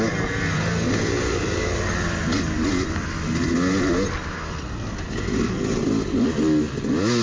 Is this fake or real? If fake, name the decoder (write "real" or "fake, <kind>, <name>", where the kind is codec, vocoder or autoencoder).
real